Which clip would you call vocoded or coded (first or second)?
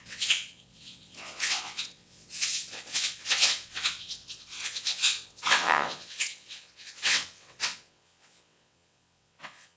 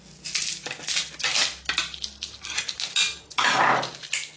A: first